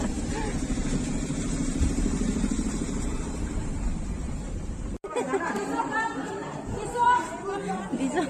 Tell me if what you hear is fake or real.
fake